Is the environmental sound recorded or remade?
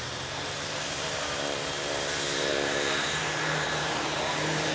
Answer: remade